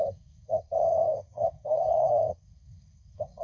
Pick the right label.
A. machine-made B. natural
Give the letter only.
A